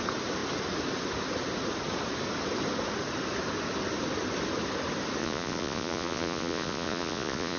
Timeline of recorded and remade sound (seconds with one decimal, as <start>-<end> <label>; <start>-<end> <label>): 0.0-5.2 recorded; 5.2-7.6 remade